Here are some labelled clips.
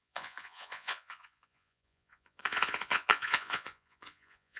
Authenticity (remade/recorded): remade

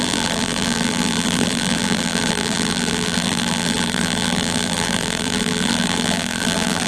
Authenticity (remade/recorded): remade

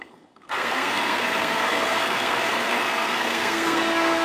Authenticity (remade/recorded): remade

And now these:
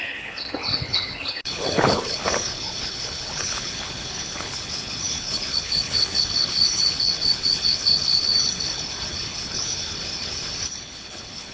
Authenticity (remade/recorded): remade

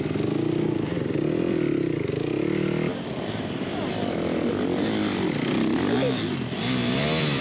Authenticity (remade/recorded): recorded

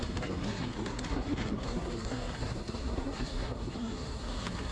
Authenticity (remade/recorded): remade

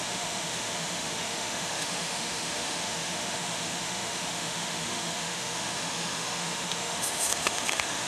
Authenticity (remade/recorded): remade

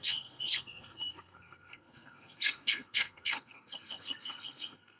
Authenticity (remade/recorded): remade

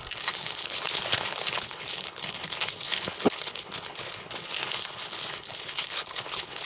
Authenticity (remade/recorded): remade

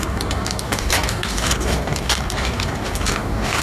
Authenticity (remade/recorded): remade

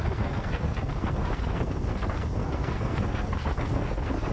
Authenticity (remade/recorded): remade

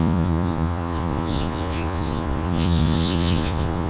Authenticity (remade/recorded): remade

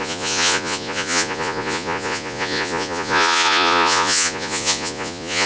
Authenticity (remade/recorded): remade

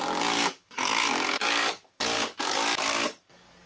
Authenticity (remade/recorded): remade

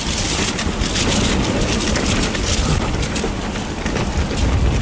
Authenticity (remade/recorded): recorded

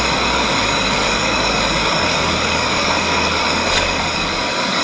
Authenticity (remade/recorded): remade